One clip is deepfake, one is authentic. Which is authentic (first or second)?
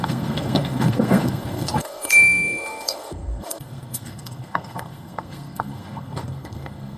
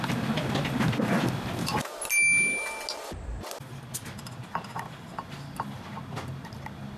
second